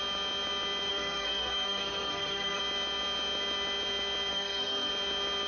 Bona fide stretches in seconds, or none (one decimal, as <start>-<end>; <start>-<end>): 0.0-0.9; 2.6-4.3; 4.9-5.5